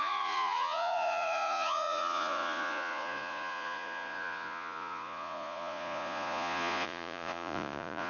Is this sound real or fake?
fake